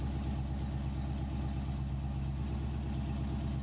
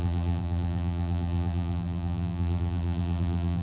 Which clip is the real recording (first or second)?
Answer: first